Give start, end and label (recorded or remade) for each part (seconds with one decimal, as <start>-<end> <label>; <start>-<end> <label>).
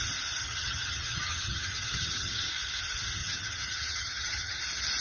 0.0-0.4 recorded; 0.4-2.5 remade; 2.5-3.2 recorded; 3.2-4.6 remade; 4.6-5.0 recorded